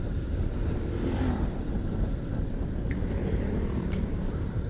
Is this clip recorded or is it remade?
remade